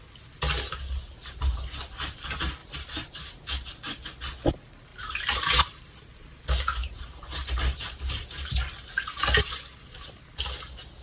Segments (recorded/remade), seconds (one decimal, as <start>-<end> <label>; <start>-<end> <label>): 0.0-1.2 recorded; 1.2-1.8 remade; 1.8-2.6 recorded; 2.6-3.4 remade; 3.4-4.9 recorded; 4.9-5.8 remade; 5.8-6.8 recorded; 6.8-8.7 remade; 8.7-11.0 recorded